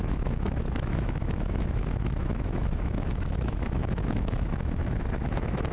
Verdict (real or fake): fake